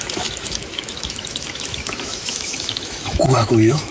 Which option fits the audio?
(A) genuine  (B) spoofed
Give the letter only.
B